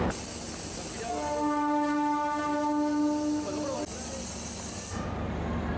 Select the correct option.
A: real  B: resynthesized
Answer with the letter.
A